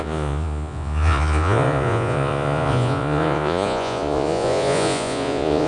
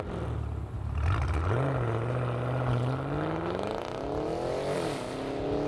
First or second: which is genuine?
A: second